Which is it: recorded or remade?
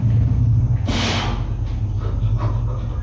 recorded